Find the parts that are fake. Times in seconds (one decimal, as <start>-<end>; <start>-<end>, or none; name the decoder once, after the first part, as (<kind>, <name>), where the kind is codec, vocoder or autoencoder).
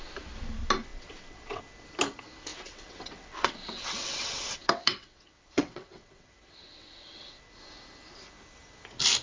0.9-1.6 (vocoder, WaveNeXt); 2.5-7.4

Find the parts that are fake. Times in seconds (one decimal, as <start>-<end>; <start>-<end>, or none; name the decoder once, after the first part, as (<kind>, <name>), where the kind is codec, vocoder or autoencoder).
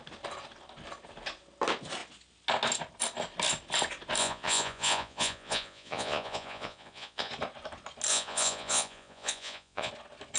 4.2-7.3 (vocoder, Vocos); 8.1-9.9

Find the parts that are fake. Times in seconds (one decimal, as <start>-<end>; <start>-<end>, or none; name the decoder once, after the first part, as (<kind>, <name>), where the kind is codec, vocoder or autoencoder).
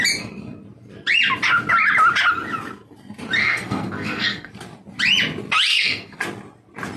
3.4-4.5 (codec, SNAC); 5.7-6.2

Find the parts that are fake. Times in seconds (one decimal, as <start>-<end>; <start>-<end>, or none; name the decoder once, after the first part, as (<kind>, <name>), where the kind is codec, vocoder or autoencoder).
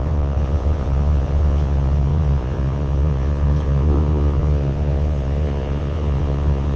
0.0-6.8 (vocoder, Vocos)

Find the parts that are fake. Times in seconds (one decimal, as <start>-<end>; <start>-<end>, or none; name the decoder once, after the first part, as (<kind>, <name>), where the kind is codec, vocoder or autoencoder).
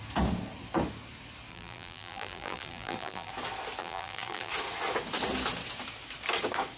1.5-3.3 (vocoder, BigVGAN v2); 3.8-4.5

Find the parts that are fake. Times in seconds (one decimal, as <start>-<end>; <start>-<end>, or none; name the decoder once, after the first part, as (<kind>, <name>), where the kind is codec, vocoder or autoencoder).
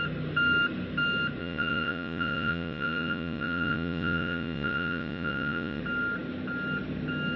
1.4-5.8 (vocoder, Vocos)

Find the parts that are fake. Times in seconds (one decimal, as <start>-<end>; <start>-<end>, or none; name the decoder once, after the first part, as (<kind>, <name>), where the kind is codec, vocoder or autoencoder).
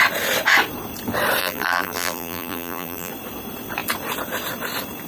1.4-3.1 (vocoder, BigVGAN v2)